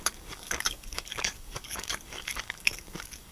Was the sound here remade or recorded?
remade